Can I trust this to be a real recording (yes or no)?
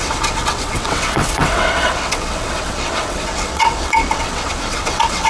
no